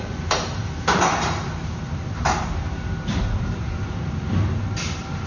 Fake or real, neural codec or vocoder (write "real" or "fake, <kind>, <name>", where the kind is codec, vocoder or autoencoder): fake, vocoder, BigVGAN v2